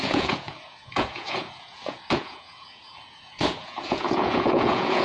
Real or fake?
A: fake